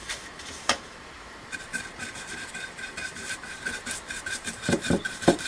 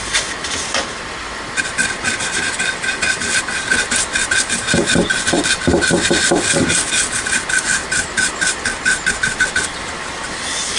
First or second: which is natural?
second